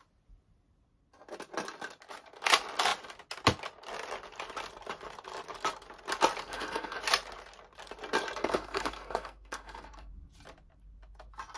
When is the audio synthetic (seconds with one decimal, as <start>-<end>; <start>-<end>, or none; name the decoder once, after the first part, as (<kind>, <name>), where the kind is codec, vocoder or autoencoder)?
6.4-7.0 (codec, SNAC); 8.4-10.1